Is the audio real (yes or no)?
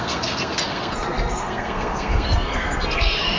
no